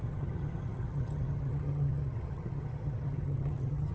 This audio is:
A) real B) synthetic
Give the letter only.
B